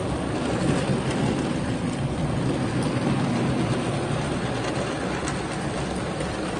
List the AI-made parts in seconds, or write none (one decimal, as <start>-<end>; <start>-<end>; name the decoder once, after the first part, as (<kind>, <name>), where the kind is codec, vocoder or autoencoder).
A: none